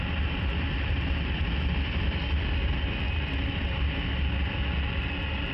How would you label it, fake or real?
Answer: real